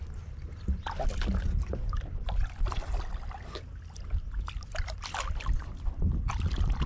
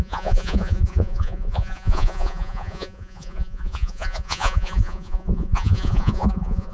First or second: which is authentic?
first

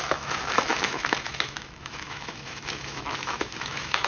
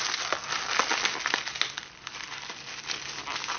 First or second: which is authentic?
second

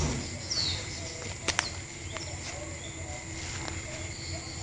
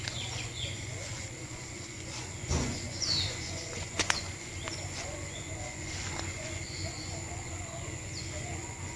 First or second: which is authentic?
first